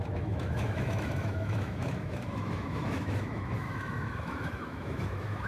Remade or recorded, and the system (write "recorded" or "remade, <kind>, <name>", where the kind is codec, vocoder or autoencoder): remade, autoencoder, DAC-VAE